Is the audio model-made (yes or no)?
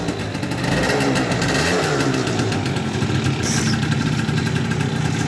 no